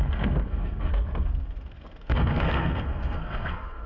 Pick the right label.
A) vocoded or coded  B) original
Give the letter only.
A